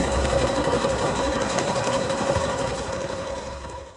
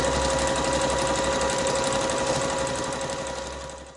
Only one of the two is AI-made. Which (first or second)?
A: first